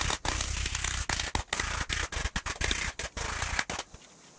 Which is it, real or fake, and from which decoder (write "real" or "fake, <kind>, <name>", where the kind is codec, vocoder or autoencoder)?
real